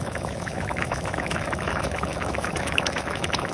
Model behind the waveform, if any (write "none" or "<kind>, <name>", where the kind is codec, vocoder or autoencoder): autoencoder, DAC-VAE